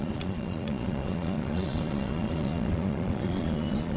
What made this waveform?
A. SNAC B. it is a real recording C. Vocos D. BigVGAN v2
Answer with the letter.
C